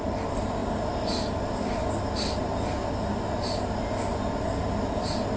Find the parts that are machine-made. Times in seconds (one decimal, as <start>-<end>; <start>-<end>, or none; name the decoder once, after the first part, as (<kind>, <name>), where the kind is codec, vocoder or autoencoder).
none